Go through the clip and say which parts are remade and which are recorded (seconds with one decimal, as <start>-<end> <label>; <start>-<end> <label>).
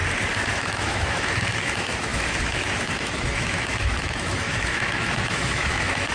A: 0.0-0.5 recorded; 0.5-6.1 remade